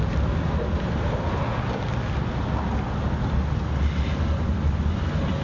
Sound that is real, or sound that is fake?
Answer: real